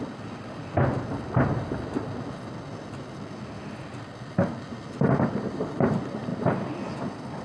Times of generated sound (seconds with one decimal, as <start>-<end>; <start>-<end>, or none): none